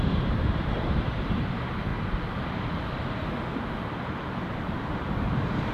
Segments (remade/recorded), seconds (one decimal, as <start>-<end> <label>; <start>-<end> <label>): 0.0-1.9 remade; 1.9-4.0 recorded; 4.0-5.7 remade